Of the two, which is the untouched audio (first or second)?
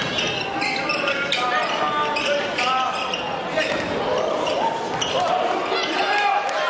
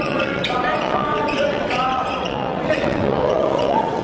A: first